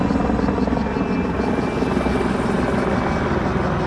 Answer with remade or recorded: recorded